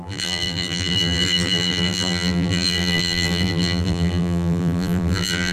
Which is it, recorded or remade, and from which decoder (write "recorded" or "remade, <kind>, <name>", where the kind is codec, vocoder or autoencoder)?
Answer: remade, vocoder, BigVGAN v2